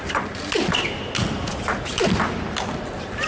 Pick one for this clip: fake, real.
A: real